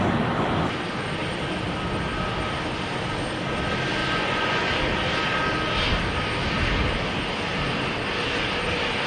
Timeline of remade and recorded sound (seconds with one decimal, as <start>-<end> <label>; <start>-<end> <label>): 0.0-4.0 recorded; 4.0-4.7 remade; 4.7-9.1 recorded